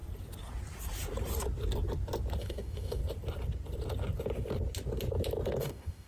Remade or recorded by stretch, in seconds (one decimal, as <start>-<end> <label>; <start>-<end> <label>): 0.0-2.4 recorded; 2.4-3.0 remade; 3.0-5.6 recorded; 5.6-6.1 remade